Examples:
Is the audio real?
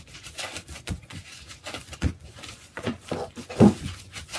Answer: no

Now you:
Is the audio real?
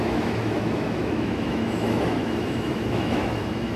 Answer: no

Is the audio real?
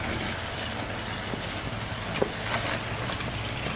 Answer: yes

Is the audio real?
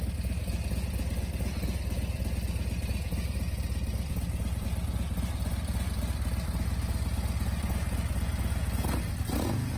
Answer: yes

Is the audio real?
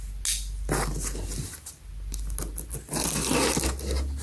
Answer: yes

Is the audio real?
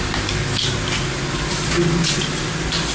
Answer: yes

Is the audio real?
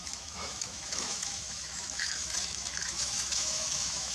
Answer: no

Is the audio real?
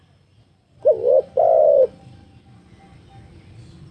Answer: yes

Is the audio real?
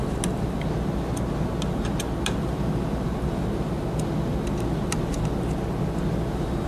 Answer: yes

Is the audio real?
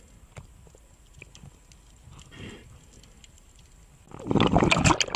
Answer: yes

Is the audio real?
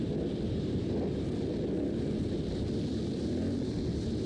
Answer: yes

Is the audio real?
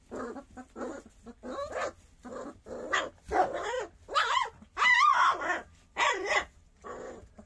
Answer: yes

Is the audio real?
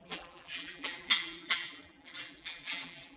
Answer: no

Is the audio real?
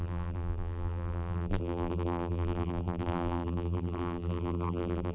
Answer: no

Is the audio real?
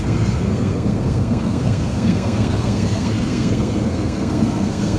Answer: no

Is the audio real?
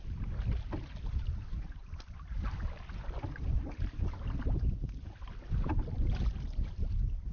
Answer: yes